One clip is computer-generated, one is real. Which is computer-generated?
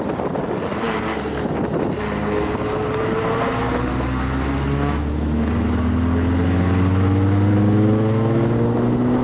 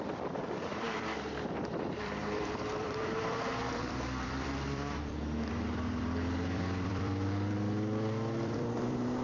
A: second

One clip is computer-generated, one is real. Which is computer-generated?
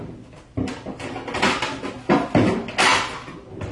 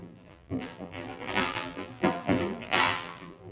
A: second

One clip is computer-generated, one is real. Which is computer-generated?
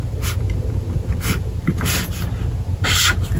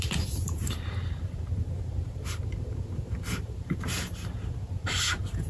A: second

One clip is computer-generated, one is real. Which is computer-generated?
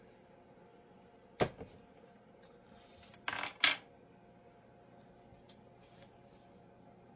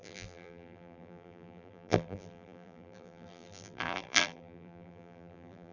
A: second